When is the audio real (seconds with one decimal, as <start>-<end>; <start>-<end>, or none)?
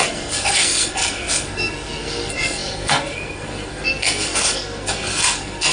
none